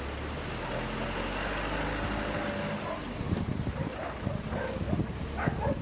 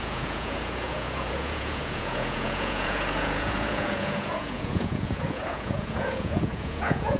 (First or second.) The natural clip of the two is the first